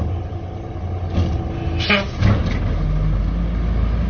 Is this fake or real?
real